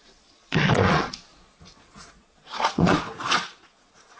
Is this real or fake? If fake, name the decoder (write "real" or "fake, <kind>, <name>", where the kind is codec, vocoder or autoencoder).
fake, vocoder, Vocos